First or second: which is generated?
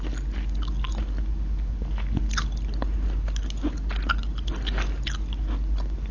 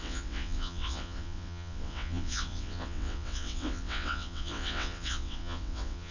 second